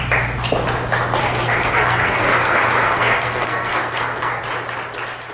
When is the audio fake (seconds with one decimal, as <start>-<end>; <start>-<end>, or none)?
1.2-4.4